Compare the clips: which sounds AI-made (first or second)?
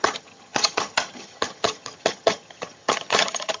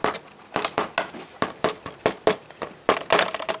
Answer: first